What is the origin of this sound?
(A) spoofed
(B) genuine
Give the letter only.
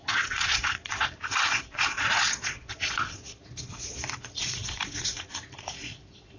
A